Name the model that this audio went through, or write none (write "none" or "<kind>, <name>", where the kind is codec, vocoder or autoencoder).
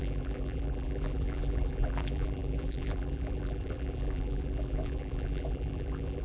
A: vocoder, BigVGAN v2